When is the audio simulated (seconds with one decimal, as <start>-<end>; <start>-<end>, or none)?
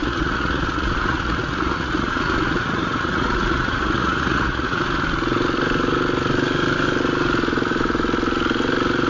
0.0-4.8